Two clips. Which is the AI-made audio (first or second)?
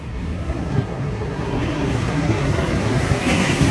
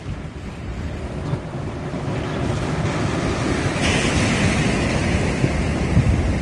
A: first